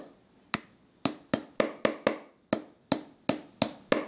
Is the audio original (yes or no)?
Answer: yes